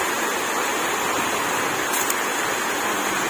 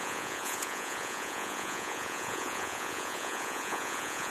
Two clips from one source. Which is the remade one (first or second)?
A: second